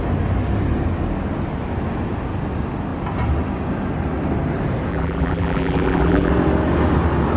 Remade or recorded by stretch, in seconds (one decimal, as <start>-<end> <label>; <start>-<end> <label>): 0.0-4.9 recorded; 4.9-6.3 remade; 6.3-7.4 recorded